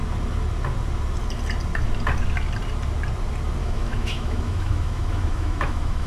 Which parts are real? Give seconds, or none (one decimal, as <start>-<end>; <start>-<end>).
0.0-3.6